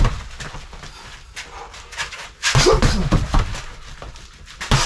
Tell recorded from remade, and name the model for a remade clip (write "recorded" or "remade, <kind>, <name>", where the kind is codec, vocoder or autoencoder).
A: recorded